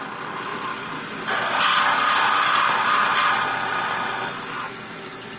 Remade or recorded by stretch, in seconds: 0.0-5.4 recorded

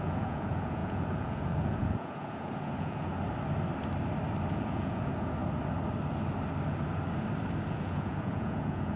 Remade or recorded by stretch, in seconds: 0.0-3.1 remade; 3.1-4.5 recorded; 4.5-5.4 remade; 5.4-7.7 recorded; 7.7-9.0 remade

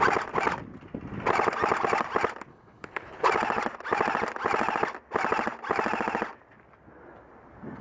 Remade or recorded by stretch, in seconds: 0.0-2.5 recorded; 2.5-3.3 remade; 3.3-7.8 recorded

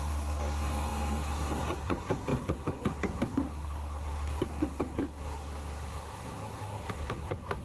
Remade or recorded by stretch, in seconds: 0.0-7.6 remade

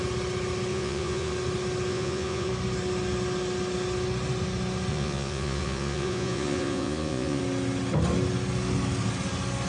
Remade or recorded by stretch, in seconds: 0.0-0.7 recorded; 0.7-1.3 remade; 1.3-1.9 recorded; 1.9-2.5 remade; 2.5-4.9 recorded; 4.9-7.4 remade; 7.4-9.7 recorded

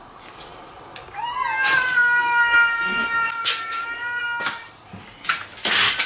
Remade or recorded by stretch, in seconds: 0.0-1.9 recorded; 1.9-4.2 remade; 4.2-6.1 recorded